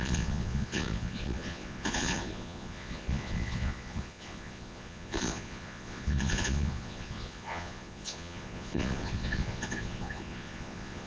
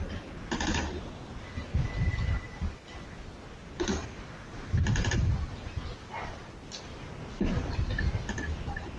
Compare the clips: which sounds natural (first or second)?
second